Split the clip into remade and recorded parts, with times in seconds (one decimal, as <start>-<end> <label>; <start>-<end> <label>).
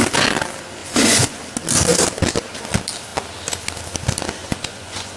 0.0-0.8 recorded; 0.8-1.4 remade; 1.4-4.4 recorded; 4.4-5.2 remade